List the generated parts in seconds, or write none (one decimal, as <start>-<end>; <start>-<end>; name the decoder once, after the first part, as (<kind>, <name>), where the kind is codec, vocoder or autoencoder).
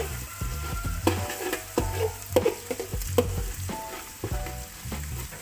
none